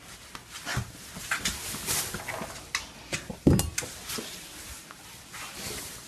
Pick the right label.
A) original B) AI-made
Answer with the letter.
A